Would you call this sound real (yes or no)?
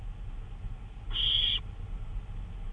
yes